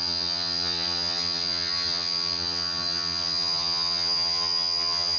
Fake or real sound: fake